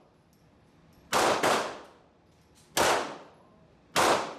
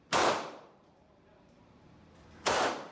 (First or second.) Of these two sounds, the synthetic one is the second